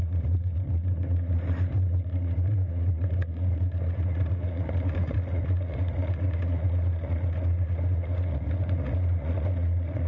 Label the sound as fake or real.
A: fake